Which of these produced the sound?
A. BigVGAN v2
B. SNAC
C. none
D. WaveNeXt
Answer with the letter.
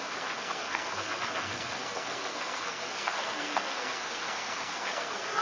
B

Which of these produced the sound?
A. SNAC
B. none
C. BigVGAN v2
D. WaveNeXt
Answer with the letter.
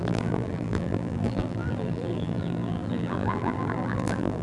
C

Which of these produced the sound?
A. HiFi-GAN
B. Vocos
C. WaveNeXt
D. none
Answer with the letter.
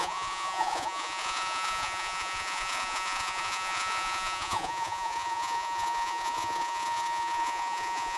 B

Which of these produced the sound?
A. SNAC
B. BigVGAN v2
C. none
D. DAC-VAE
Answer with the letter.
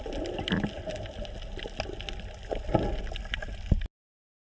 C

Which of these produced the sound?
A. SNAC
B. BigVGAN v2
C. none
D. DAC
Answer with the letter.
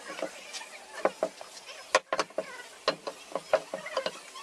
C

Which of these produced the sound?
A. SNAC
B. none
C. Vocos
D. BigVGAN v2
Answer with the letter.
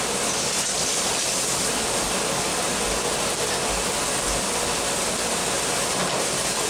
B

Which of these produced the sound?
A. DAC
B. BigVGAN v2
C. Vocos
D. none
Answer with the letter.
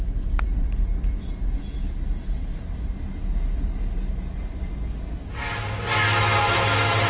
D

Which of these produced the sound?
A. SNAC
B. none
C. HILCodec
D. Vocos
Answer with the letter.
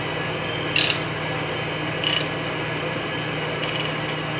B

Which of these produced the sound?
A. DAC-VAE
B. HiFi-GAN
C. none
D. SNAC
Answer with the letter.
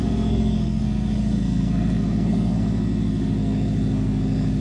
D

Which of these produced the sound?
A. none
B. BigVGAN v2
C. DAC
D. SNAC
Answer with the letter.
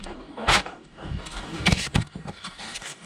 C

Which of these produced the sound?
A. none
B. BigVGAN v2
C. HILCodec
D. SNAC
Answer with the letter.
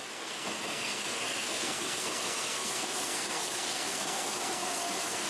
D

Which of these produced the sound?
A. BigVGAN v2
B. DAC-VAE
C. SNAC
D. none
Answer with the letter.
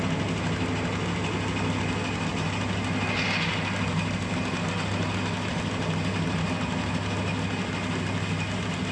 D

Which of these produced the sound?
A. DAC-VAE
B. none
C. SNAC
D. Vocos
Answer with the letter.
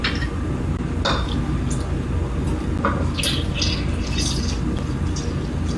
B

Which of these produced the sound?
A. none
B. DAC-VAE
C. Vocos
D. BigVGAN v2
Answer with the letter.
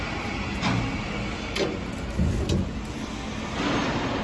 A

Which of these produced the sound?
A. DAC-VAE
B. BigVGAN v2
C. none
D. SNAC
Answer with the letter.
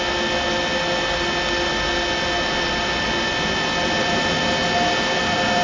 C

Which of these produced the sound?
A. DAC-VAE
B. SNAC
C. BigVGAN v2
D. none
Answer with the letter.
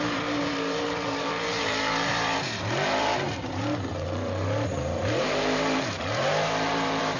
C